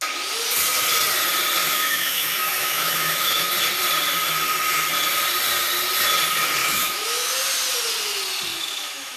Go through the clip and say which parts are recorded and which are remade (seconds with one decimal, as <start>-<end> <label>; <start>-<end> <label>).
0.0-1.6 recorded; 1.6-3.5 remade; 3.5-6.6 recorded; 6.6-7.4 remade; 7.4-8.5 recorded; 8.5-9.2 remade